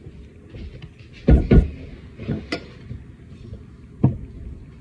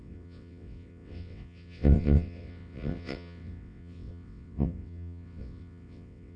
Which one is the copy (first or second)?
second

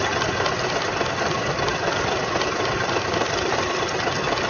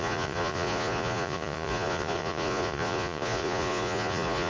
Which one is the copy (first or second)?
second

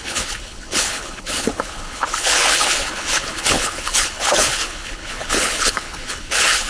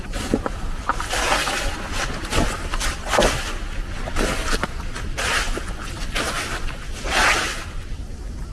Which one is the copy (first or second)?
first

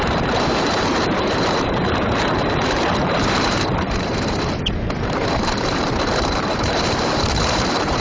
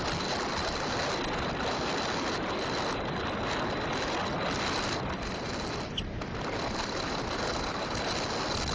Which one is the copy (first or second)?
first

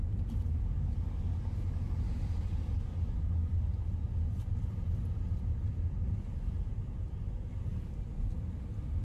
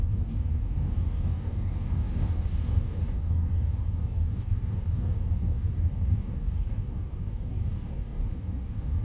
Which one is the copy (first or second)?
second